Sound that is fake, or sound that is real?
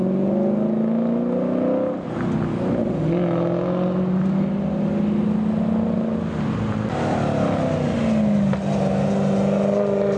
real